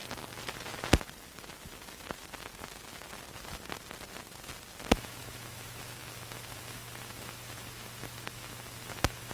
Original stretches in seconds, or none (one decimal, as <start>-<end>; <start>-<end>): 0.0-4.9